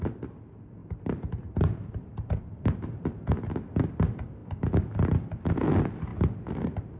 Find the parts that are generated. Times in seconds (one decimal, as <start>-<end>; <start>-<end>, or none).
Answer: 0.8-3.3; 6.1-7.0